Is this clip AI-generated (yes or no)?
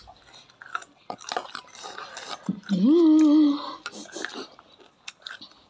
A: no